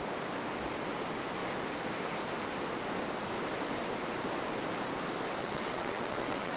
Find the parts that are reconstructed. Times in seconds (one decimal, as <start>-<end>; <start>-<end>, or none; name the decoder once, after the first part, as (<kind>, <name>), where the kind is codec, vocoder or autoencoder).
5.4-6.6 (vocoder, WaveNeXt)